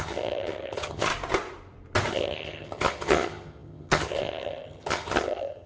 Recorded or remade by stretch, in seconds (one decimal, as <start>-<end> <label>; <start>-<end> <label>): 0.0-1.1 remade; 1.1-2.1 recorded; 2.1-5.7 remade